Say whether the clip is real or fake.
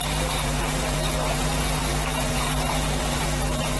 fake